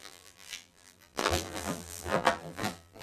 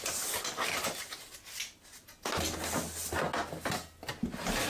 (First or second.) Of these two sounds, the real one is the second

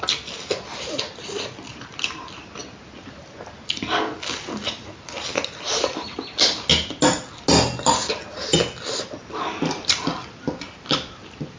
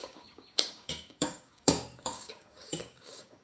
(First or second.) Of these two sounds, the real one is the first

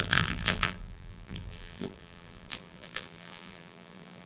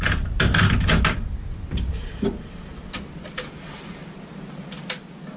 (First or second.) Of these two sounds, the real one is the second